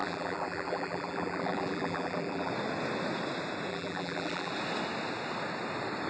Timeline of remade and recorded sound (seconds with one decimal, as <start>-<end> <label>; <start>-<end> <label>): 0.0-2.5 remade; 2.5-3.7 recorded; 3.7-4.5 remade; 4.5-6.1 recorded